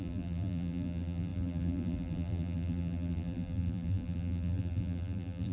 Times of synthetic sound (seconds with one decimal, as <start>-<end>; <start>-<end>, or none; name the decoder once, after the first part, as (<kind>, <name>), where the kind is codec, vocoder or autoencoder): 0.0-5.5 (vocoder, BigVGAN v2)